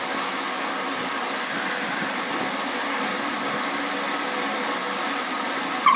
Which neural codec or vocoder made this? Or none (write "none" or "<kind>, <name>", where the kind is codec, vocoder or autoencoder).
none